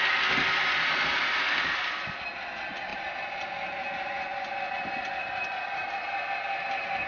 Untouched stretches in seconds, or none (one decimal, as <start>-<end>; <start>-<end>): 0.0-7.1